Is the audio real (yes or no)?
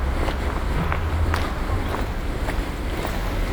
yes